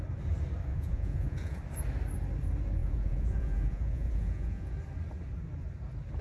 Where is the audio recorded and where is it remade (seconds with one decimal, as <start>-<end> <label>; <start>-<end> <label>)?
0.0-0.7 recorded; 0.7-1.6 remade; 1.6-2.8 recorded; 2.8-4.7 remade; 4.7-6.2 recorded